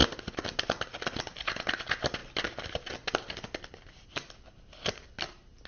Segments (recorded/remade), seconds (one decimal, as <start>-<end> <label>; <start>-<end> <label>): 0.0-5.7 recorded